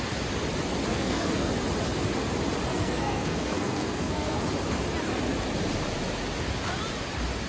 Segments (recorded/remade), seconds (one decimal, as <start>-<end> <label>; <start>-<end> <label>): 0.0-0.9 recorded; 0.9-1.5 remade; 1.5-2.7 recorded; 2.7-4.4 remade; 4.4-7.5 recorded